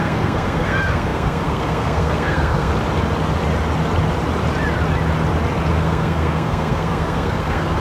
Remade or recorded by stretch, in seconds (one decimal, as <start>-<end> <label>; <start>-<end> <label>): 0.0-2.7 remade; 2.7-5.7 recorded; 5.7-7.8 remade